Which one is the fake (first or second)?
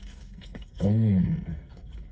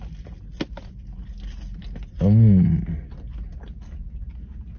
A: first